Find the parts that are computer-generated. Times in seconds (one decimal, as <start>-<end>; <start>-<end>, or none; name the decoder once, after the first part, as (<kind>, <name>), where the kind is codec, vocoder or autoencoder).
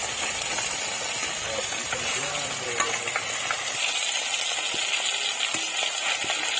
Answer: none